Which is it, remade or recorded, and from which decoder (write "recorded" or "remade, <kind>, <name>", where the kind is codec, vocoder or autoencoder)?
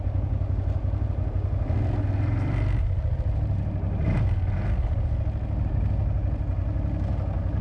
recorded